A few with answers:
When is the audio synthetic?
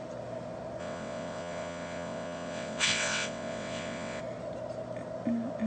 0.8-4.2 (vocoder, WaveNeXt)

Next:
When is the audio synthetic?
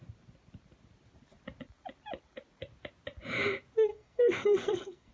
3.9-5.1 (codec, SNAC)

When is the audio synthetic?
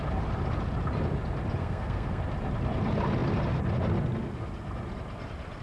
1.6-2.2 (codec, SNAC)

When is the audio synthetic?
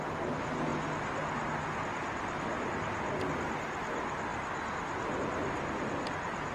none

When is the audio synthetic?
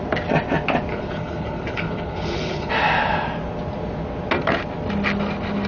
0.9-2.7 (codec, HILCodec)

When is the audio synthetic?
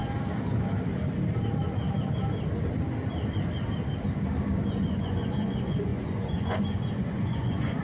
4.7-7.8 (vocoder, Vocos)